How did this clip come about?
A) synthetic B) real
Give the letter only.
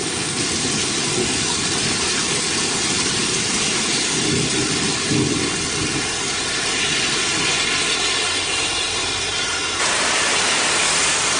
B